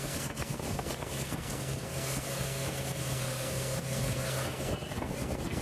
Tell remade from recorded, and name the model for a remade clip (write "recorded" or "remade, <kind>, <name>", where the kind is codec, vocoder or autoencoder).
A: remade, codec, SNAC